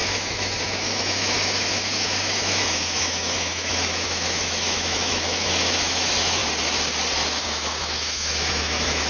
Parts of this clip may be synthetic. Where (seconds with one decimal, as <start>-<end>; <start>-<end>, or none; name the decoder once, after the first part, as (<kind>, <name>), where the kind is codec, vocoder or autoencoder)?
0.0-6.4 (autoencoder, DAC-VAE); 7.4-9.1